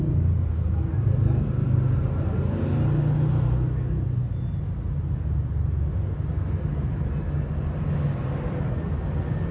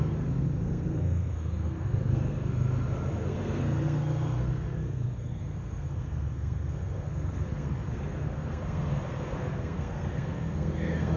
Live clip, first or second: first